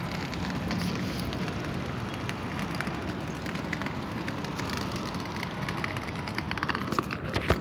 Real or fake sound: real